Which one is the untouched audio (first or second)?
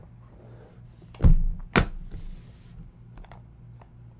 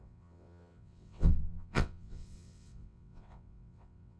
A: first